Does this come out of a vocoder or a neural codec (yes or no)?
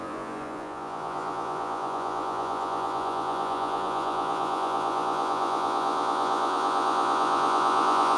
yes